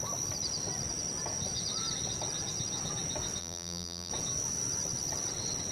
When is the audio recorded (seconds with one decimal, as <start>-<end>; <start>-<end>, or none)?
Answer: 0.0-3.4; 4.1-5.7